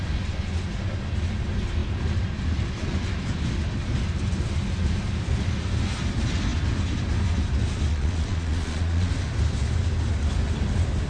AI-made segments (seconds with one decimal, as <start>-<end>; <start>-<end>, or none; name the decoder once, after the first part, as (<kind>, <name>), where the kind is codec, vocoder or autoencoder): 7.9-9.1 (vocoder, Vocos)